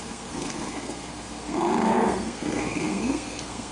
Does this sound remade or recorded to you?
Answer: remade